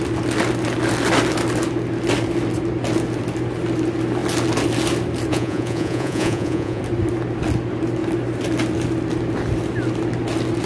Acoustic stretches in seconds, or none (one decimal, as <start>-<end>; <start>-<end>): 0.0-5.3; 6.8-10.7